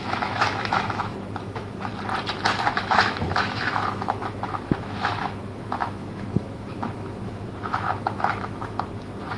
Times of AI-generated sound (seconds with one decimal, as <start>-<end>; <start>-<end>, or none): 0.0-1.9; 2.7-9.4